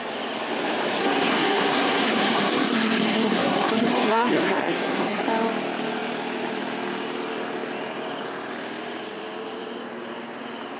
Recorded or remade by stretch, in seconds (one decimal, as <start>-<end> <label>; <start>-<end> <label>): 0.0-1.0 recorded; 1.0-5.2 remade; 5.2-10.8 recorded